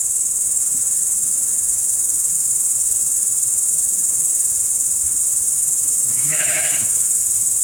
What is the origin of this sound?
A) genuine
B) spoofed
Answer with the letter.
B